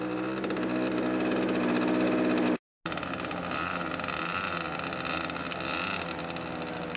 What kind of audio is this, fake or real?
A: real